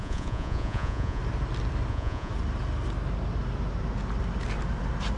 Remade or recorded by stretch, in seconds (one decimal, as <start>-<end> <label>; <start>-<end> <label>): 0.0-1.2 remade; 1.2-1.9 recorded; 1.9-2.3 remade; 2.3-5.2 recorded